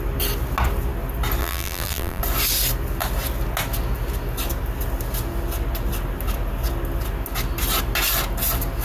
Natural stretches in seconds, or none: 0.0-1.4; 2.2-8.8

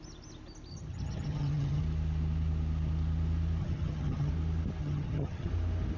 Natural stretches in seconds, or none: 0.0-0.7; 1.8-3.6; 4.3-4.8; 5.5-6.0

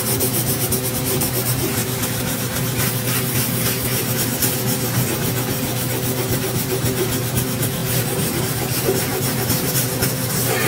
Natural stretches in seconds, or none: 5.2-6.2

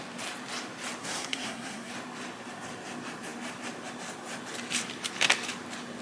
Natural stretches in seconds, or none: 0.0-1.0; 1.9-6.0